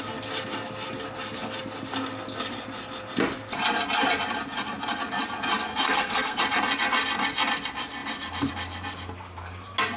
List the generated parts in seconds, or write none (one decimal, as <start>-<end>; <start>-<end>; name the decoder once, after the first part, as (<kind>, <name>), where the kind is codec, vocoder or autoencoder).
5.7-6.4 (codec, SNAC)